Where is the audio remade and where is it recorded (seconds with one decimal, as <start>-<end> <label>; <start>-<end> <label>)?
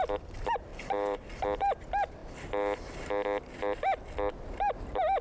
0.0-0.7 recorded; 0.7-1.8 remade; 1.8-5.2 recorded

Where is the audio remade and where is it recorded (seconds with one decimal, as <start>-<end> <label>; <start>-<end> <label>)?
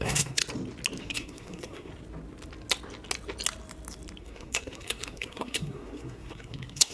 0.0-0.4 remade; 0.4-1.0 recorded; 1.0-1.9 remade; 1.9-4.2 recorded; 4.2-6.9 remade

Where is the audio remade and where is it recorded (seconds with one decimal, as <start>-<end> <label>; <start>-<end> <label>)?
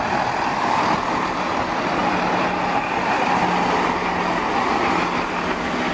0.0-5.9 recorded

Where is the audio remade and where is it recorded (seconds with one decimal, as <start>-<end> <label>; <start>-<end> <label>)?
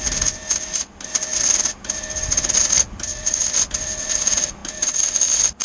0.0-5.6 recorded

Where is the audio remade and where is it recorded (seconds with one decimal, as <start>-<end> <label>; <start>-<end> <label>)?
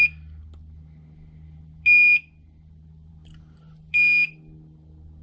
0.0-5.2 recorded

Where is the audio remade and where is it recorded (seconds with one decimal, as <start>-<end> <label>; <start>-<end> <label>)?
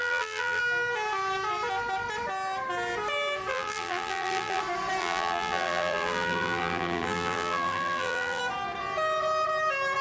0.0-0.6 remade; 0.6-3.5 recorded; 3.5-4.6 remade; 4.6-5.0 recorded; 5.0-8.4 remade; 8.4-10.0 recorded